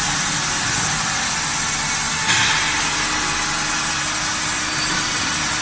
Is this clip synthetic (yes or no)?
no